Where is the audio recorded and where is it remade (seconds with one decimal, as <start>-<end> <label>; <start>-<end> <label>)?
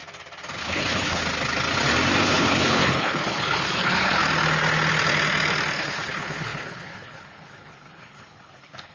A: 0.0-0.6 recorded; 0.6-1.2 remade; 1.2-2.2 recorded; 2.2-4.2 remade; 4.2-5.8 recorded; 5.8-8.9 remade